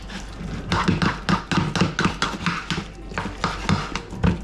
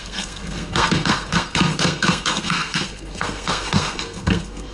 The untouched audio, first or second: first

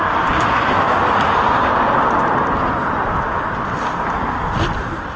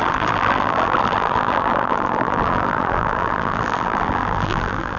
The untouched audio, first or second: first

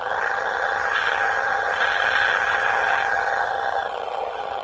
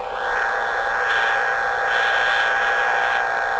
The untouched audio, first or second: second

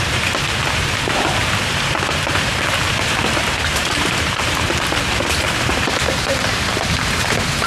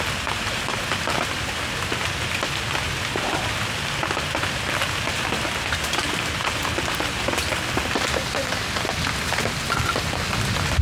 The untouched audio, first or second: second